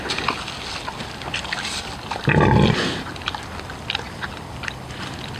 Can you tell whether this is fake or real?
real